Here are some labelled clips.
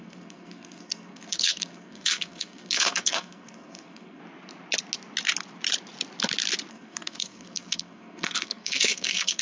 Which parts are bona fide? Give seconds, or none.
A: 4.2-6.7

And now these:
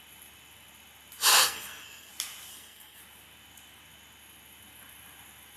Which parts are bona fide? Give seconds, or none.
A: 0.0-1.3; 2.1-2.5; 3.0-5.6

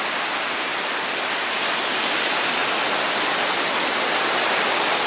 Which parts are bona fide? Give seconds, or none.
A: 0.0-5.1

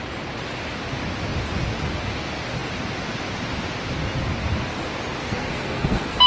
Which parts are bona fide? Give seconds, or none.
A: 0.0-5.2

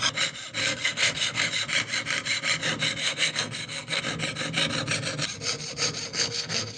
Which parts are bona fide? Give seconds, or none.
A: 0.0-0.6; 1.5-3.0; 4.0-6.1

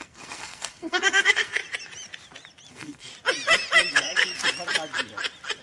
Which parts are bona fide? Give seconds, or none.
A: 1.6-2.7; 3.1-3.9; 4.3-5.6

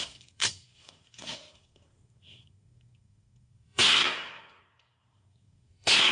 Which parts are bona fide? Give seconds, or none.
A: none